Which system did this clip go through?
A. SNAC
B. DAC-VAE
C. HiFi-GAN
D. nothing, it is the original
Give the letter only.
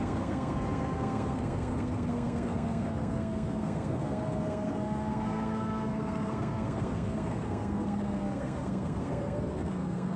A